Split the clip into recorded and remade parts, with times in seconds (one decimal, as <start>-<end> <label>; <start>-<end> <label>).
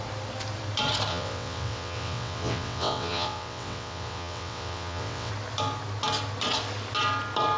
0.0-1.1 recorded; 1.1-5.3 remade; 5.3-7.6 recorded